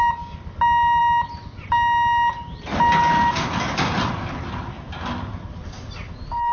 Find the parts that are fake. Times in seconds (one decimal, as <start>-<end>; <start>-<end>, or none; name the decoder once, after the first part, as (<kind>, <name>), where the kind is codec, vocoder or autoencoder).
none